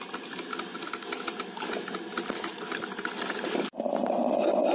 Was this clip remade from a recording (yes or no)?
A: no